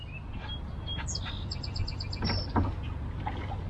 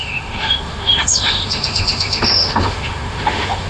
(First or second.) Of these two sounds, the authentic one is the first